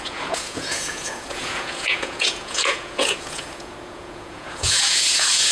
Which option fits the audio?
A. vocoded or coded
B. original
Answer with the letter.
A